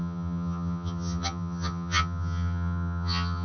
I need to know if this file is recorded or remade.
remade